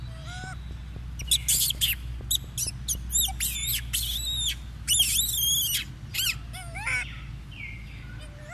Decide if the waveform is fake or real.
real